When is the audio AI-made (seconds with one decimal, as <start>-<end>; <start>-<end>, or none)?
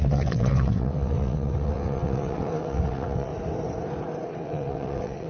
0.0-3.3; 4.3-5.3